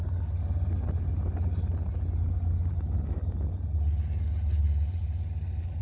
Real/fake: real